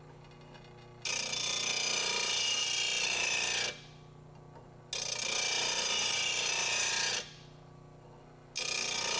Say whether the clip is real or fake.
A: real